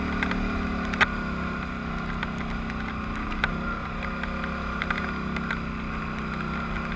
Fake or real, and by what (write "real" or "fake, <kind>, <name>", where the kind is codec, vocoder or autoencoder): real